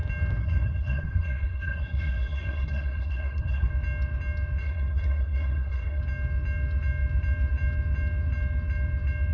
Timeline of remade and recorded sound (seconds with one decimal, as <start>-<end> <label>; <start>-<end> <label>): 0.0-0.4 recorded; 0.4-3.7 remade; 3.7-4.6 recorded; 4.6-6.0 remade; 6.0-9.3 recorded

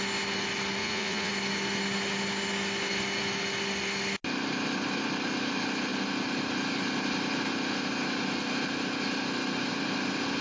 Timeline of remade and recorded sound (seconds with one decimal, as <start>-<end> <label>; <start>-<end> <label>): 0.0-0.8 recorded; 0.8-1.3 remade; 1.3-10.4 recorded

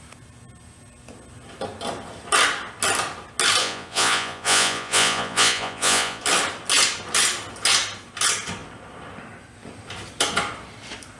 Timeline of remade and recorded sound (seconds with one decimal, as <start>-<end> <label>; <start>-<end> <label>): 0.0-3.6 recorded; 3.6-6.2 remade; 6.2-11.2 recorded

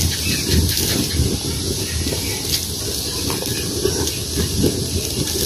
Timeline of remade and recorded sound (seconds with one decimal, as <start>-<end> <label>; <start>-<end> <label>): 0.0-5.5 recorded

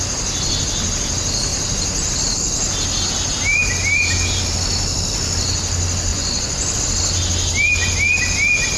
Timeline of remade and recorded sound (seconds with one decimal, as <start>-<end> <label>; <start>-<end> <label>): 0.0-6.1 recorded; 6.1-6.8 remade; 6.8-8.8 recorded